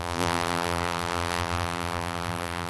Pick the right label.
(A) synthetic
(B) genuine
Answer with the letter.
A